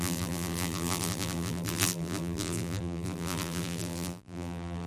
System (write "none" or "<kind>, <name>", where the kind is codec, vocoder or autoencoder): vocoder, BigVGAN v2